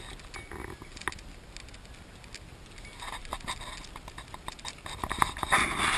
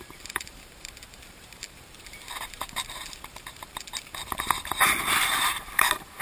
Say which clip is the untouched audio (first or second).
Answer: first